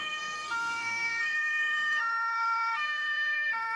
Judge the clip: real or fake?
fake